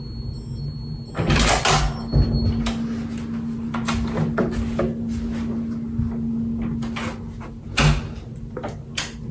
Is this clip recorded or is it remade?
recorded